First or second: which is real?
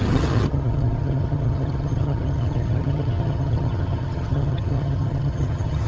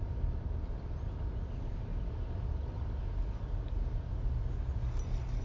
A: second